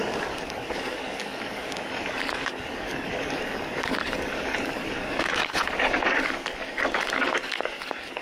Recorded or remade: remade